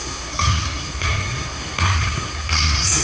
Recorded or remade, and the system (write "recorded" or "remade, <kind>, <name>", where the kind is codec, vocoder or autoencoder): remade, codec, SNAC